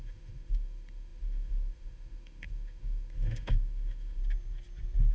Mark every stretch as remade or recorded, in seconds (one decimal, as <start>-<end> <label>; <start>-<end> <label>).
0.0-4.2 remade; 4.2-5.1 recorded